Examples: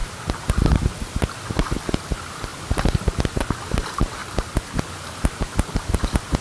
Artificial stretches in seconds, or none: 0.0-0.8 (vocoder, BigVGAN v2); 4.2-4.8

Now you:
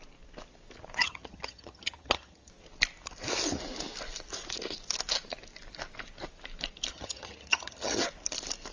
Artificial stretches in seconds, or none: 1.0-2.5 (vocoder, HiFi-GAN); 6.9-8.0